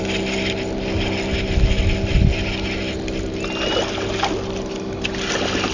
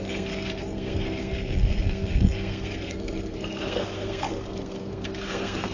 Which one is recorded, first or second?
first